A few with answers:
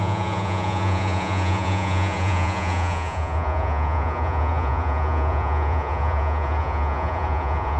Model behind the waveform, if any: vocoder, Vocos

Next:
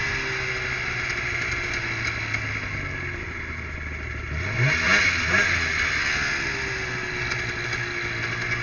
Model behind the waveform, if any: none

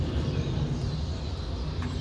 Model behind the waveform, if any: none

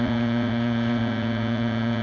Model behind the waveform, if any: vocoder, Vocos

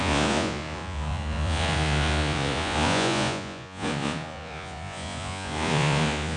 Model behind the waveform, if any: vocoder, Vocos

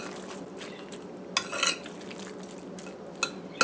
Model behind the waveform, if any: none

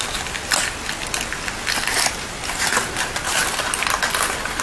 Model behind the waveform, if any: none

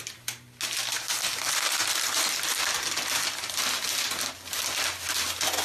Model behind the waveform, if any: none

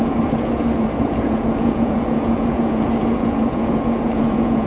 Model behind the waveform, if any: vocoder, Vocos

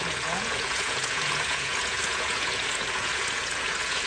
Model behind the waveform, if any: vocoder, Vocos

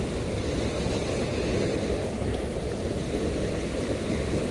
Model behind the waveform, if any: none